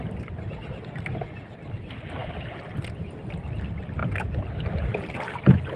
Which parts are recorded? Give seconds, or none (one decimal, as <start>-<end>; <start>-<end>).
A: 0.0-5.8